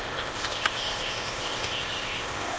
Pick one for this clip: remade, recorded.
remade